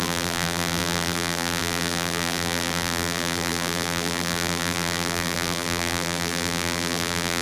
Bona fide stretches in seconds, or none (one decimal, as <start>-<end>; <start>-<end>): none

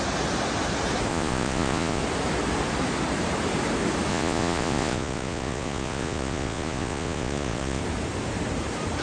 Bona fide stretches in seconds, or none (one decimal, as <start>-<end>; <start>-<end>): 0.0-1.1; 2.0-4.1; 7.8-9.0

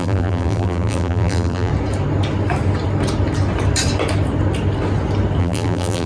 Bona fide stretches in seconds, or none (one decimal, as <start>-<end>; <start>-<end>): 1.7-5.4